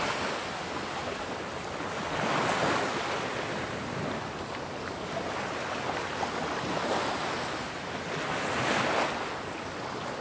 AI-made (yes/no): no